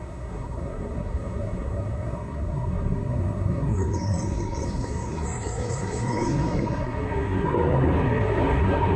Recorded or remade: remade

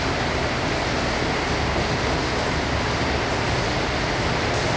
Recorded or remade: recorded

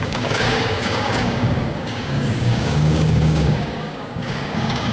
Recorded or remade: remade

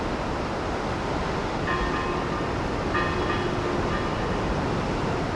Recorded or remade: recorded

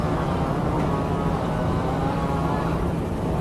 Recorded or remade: remade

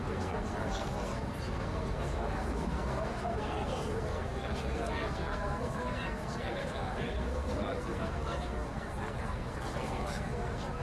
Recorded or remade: remade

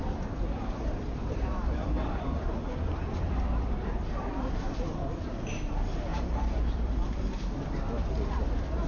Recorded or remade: remade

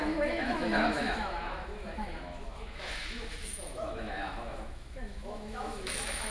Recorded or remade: remade